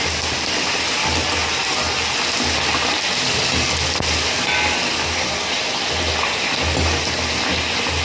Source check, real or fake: real